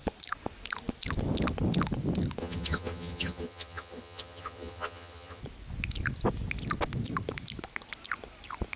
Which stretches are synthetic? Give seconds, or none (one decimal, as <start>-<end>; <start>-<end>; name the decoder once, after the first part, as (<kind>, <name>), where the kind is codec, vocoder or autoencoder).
2.4-5.4 (vocoder, HiFi-GAN)